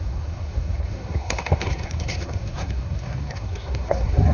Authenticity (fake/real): fake